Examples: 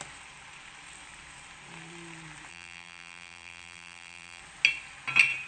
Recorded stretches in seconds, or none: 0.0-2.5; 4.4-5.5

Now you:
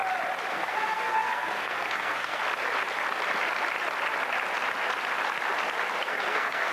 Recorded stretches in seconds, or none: 0.0-0.5; 2.4-6.0